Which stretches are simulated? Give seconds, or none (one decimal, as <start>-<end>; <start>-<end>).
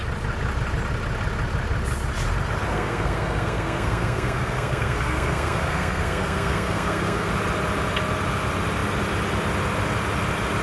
2.7-7.3